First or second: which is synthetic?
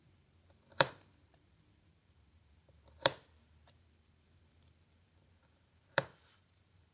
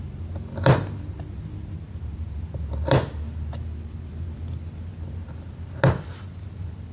first